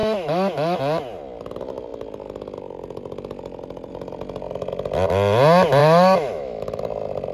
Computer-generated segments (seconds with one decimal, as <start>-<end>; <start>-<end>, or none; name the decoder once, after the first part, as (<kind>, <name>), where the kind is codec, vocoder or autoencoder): 0.0-0.8 (autoencoder, DAC-VAE); 5.8-6.8